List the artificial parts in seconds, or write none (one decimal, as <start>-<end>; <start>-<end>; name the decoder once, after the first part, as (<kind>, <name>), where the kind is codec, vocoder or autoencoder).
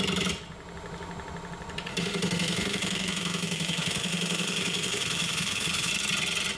1.9-5.9 (autoencoder, DAC-VAE)